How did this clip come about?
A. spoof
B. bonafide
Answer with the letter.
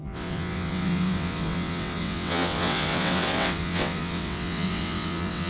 A